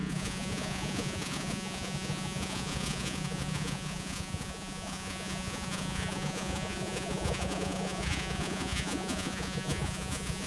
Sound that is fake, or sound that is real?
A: fake